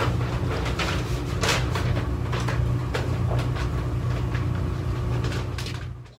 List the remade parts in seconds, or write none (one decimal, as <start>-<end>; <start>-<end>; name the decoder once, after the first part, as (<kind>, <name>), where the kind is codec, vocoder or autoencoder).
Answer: none